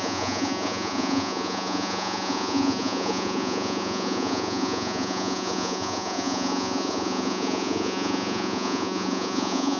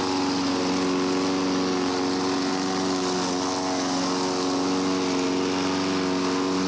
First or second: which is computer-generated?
first